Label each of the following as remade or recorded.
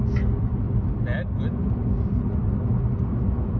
recorded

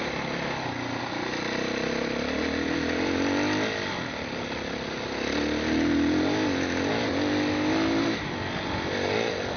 recorded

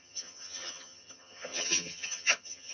remade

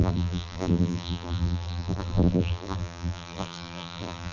remade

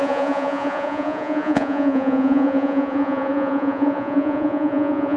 remade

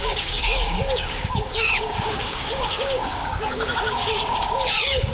remade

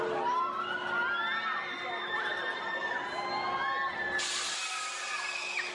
recorded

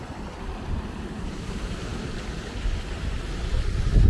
recorded